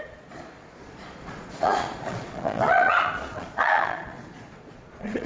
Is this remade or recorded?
remade